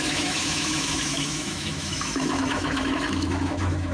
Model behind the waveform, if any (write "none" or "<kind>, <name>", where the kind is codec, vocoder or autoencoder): autoencoder, DAC-VAE